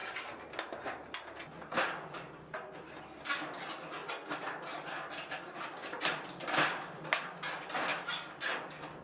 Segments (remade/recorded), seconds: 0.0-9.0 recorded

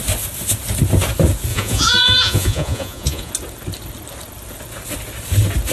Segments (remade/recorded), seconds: 0.0-1.5 recorded; 1.5-3.3 remade; 3.3-5.7 recorded

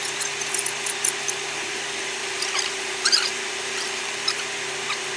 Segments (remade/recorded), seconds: 0.0-2.2 recorded; 2.2-4.0 remade; 4.0-5.2 recorded

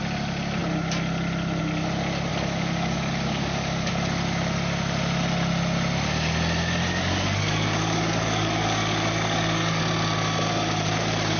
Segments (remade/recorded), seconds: 0.0-2.3 recorded; 2.3-3.9 remade; 3.9-6.8 recorded; 6.8-9.8 remade; 9.8-11.4 recorded

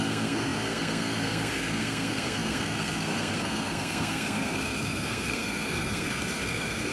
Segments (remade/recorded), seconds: 0.0-6.9 remade

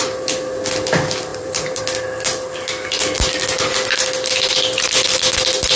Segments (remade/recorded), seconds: 0.0-1.3 recorded; 1.3-1.8 remade; 1.8-5.8 recorded